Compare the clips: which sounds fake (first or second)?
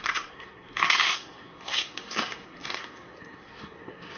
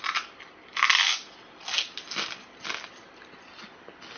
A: first